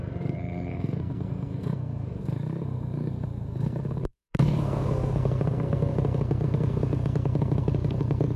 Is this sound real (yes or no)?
no